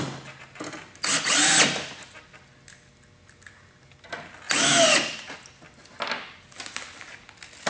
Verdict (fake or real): real